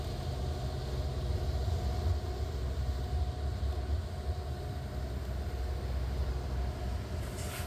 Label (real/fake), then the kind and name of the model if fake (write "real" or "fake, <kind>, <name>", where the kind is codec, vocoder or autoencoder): real